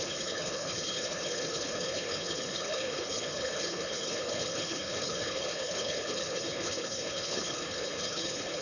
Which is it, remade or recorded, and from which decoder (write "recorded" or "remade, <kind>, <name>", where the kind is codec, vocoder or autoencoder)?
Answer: remade, codec, HILCodec